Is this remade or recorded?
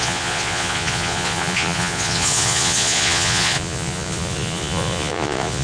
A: remade